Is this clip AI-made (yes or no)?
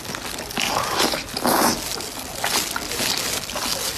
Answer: no